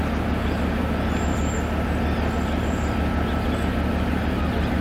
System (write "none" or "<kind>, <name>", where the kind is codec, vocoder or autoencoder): none